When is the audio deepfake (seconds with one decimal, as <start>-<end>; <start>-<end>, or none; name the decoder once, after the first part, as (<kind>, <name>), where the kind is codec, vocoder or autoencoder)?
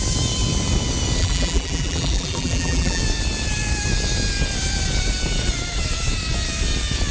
1.2-3.0 (vocoder, BigVGAN v2)